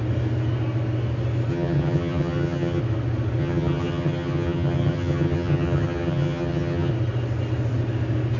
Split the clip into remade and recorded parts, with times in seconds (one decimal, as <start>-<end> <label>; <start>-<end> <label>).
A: 0.0-1.5 recorded; 1.5-2.8 remade; 2.8-3.4 recorded; 3.4-6.9 remade; 6.9-8.4 recorded